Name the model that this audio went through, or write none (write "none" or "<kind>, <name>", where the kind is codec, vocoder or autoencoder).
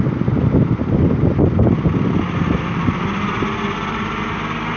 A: none